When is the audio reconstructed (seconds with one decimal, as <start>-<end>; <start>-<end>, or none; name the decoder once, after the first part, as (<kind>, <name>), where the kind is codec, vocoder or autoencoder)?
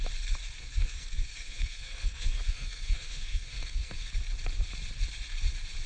0.6-4.1 (codec, SNAC)